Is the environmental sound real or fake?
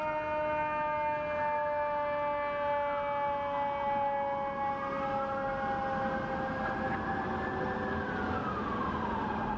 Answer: real